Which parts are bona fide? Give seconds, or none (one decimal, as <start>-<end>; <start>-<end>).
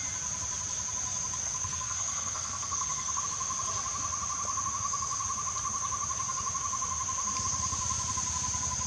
0.0-1.4; 3.2-8.9